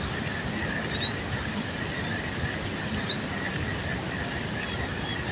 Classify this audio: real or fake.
real